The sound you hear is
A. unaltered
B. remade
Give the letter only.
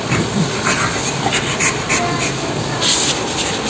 A